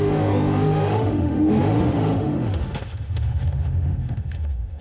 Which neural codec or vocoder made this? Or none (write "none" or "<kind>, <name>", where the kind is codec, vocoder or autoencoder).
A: autoencoder, DAC-VAE